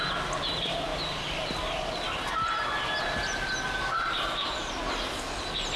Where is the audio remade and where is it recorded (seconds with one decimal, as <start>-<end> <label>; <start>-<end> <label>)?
0.0-5.8 recorded